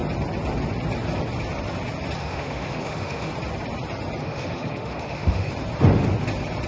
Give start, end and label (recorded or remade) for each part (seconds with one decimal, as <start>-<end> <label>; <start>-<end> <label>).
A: 0.0-2.2 recorded; 2.2-3.3 remade; 3.3-4.2 recorded; 4.2-5.5 remade; 5.5-6.7 recorded